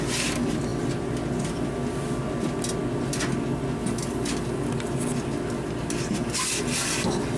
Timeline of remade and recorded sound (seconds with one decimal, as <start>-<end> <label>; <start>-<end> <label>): 0.0-7.4 recorded